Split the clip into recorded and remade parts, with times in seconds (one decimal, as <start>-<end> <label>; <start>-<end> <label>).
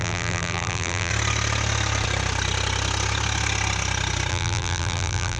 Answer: 0.0-1.1 remade; 1.1-4.3 recorded; 4.3-5.4 remade